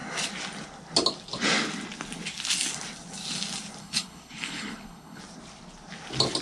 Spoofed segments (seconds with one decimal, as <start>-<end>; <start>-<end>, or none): 3.8-5.2